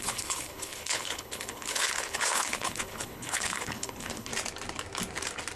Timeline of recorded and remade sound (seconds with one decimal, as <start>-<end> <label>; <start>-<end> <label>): 0.0-4.3 remade; 4.3-5.6 recorded